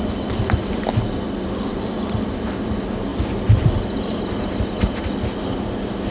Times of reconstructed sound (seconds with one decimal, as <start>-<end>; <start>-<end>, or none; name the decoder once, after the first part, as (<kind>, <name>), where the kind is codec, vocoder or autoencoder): none

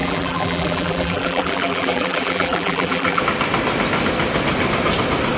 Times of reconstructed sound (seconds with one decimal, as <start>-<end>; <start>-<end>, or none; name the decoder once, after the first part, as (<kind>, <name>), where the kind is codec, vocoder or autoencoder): 0.0-3.2 (vocoder, BigVGAN v2)

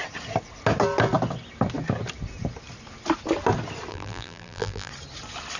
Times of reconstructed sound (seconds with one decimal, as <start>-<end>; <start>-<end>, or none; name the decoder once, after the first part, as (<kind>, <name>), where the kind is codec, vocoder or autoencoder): 3.9-4.9 (vocoder, BigVGAN v2)

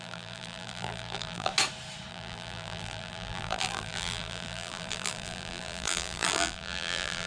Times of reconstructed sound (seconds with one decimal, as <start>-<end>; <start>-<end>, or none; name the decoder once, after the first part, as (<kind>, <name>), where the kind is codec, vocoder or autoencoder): 0.0-1.5 (vocoder, BigVGAN v2); 2.1-7.3

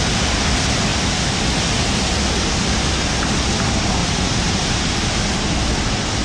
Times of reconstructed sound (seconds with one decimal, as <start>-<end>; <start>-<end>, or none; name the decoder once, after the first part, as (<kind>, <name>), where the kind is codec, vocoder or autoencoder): 4.0-5.2 (vocoder, BigVGAN v2)

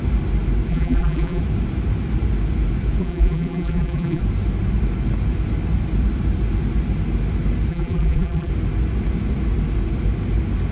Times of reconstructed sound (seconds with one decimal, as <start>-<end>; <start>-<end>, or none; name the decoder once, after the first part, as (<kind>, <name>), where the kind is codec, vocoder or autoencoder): 0.7-1.4 (vocoder, BigVGAN v2); 3.0-4.2; 7.7-8.5

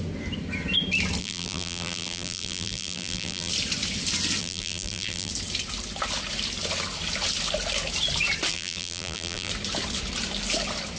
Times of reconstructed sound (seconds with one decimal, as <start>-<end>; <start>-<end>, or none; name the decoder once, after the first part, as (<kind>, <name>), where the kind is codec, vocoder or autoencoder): 1.2-3.5 (vocoder, BigVGAN v2); 4.4-5.3; 8.5-9.5

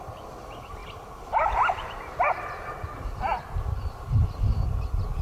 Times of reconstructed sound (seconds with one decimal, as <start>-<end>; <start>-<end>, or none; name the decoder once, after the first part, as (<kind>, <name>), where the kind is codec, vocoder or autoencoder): 0.8-3.9 (vocoder, BigVGAN v2)